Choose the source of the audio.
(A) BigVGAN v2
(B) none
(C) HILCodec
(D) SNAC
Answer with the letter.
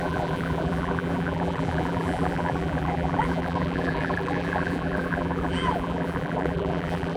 A